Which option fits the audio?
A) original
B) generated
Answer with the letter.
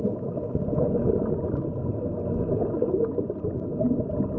A